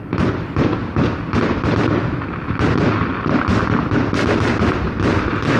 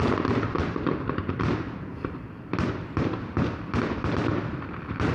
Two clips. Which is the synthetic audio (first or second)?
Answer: second